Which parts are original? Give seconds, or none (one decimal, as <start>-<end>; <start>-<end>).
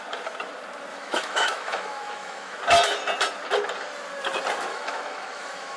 0.0-0.9; 2.6-4.7